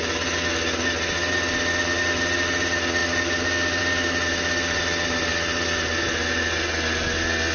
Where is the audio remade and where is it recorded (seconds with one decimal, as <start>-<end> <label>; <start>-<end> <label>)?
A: 0.0-7.5 recorded